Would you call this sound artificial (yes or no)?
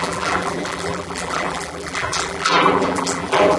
yes